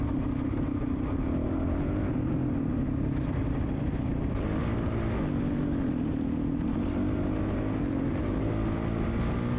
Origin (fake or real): real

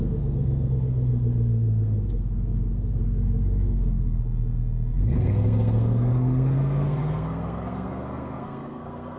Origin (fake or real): fake